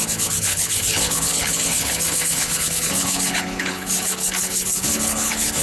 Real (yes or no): no